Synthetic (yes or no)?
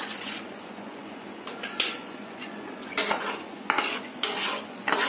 yes